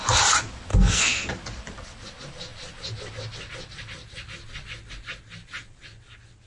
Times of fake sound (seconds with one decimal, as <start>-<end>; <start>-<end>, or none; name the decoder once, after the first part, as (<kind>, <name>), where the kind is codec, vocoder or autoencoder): 0.7-1.3 (codec, SNAC)